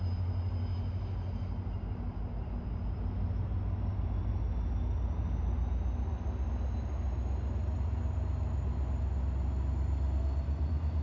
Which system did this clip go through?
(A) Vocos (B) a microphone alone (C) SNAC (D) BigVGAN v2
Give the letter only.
B